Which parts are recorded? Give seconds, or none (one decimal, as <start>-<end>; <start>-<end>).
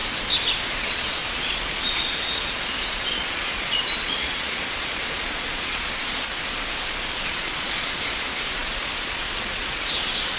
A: 0.0-0.6; 6.3-7.2